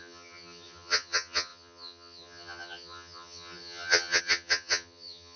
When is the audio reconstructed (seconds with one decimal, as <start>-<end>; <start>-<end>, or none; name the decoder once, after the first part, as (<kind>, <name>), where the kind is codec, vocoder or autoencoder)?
0.0-5.4 (vocoder, HiFi-GAN)